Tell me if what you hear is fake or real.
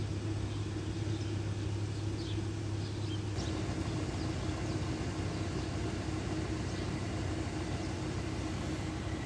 real